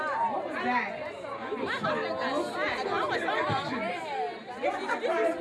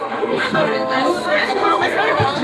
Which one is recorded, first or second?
first